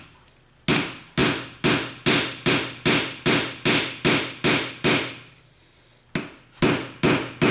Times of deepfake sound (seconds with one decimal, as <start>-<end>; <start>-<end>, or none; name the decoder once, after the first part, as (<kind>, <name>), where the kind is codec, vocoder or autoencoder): none